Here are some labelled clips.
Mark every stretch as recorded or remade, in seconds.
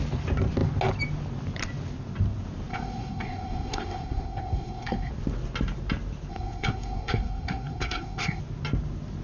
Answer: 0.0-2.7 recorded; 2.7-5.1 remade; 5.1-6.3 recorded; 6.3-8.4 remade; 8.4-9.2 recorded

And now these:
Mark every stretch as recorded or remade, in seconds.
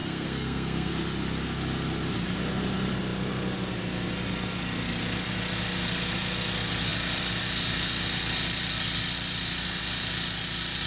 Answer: 0.0-0.9 remade; 0.9-10.9 recorded